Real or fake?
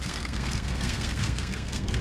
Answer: fake